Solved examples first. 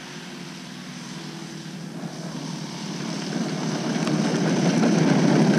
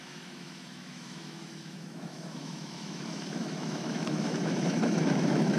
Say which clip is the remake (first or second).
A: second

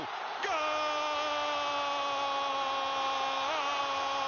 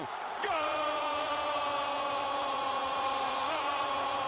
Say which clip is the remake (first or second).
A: second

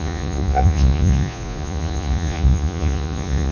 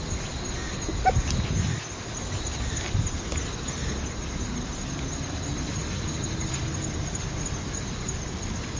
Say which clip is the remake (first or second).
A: first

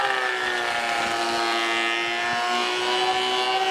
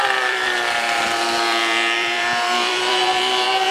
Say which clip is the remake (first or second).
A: second